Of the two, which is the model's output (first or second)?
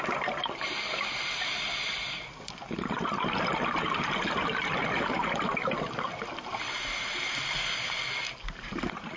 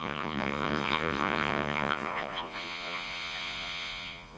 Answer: second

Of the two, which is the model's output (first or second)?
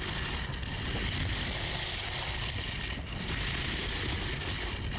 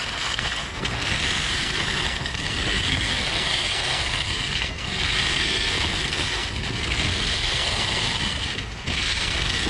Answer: second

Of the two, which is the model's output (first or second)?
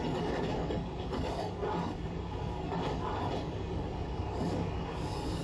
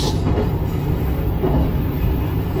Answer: first